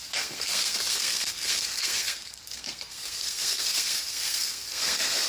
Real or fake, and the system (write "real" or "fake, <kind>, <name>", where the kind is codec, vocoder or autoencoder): fake, codec, SNAC